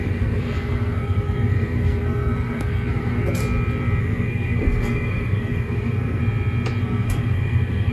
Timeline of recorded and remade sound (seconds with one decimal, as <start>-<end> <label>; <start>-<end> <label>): 0.0-3.4 remade; 3.4-4.0 recorded; 4.0-6.2 remade; 6.2-6.8 recorded; 6.8-7.9 remade